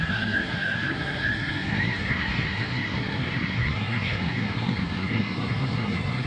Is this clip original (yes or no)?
no